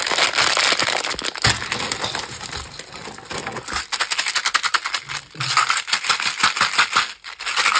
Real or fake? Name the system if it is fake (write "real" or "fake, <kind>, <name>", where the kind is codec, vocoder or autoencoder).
real